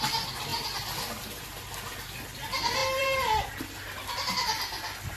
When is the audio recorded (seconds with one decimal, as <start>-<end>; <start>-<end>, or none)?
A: 0.0-2.8; 3.4-5.2

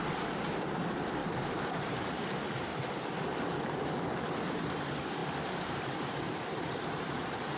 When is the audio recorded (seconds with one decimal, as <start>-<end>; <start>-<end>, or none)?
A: 2.7-4.4

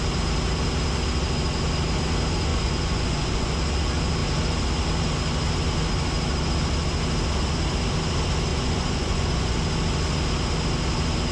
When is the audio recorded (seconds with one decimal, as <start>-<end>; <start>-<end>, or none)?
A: 0.0-2.5; 3.5-8.5; 9.6-11.3

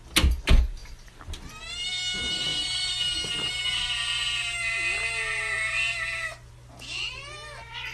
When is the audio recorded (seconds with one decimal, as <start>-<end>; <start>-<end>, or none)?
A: 0.0-7.9

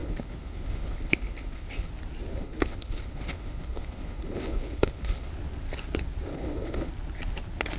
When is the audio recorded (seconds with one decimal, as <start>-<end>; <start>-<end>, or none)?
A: 1.9-2.3; 5.3-6.3; 6.9-7.8